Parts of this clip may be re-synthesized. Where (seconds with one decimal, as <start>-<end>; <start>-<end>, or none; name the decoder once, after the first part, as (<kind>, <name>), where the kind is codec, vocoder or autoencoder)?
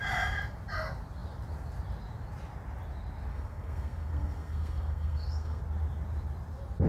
3.3-5.6 (codec, SNAC)